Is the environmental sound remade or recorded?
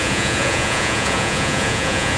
remade